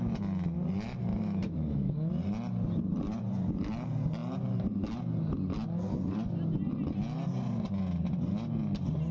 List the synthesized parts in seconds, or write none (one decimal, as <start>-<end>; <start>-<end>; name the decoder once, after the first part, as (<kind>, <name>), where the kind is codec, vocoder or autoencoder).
1.1-2.1 (autoencoder, DAC-VAE)